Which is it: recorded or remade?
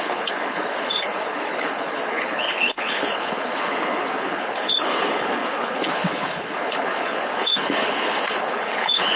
remade